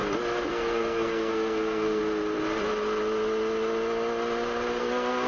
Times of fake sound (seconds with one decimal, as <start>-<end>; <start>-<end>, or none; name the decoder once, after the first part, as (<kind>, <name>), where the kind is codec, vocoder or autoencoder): 0.5-2.0 (codec, SNAC); 4.8-5.3